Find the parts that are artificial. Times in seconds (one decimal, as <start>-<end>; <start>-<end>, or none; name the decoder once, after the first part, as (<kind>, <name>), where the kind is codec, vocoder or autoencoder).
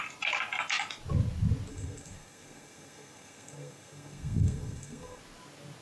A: 1.7-5.2 (codec, SNAC)